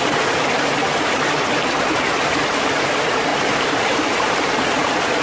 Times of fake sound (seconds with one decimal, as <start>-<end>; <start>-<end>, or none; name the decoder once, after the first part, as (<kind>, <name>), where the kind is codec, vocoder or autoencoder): 3.3-4.4 (vocoder, BigVGAN v2)